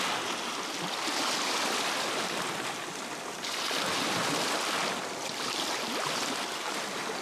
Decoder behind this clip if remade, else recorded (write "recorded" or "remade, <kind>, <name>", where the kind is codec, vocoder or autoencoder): recorded